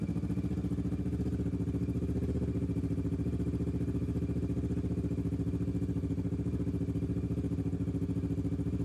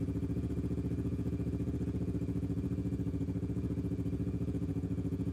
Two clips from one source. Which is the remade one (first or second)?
second